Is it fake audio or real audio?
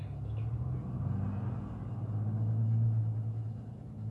real